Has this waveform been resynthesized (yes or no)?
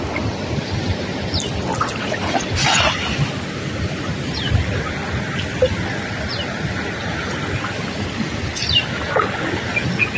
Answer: no